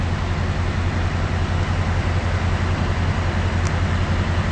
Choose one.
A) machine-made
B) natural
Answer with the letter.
B